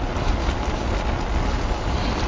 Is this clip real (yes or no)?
yes